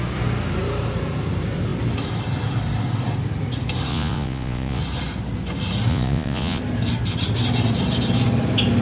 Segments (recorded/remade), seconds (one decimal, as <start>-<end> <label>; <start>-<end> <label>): 0.0-3.9 recorded; 3.9-4.8 remade; 4.8-5.9 recorded; 5.9-6.6 remade; 6.6-8.8 recorded

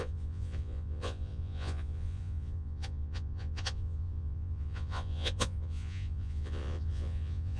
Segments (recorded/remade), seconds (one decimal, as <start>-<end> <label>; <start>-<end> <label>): 0.0-7.6 remade